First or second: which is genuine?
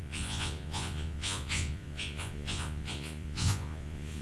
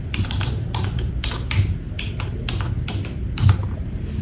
second